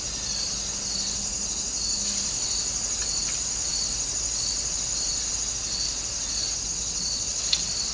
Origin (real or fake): real